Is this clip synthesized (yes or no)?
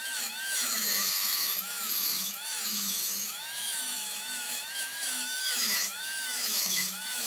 yes